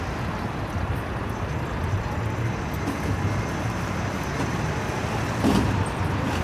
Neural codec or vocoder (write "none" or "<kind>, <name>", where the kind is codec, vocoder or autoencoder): none